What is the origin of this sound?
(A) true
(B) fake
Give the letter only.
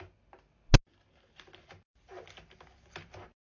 A